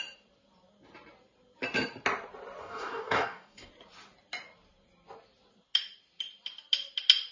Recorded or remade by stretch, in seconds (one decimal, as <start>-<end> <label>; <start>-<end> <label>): 0.0-2.6 recorded; 2.6-3.7 remade; 3.7-7.3 recorded